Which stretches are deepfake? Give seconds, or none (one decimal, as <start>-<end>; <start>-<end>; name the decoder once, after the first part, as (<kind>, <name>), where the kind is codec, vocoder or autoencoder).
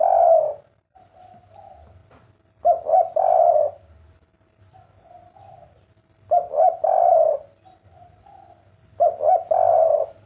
none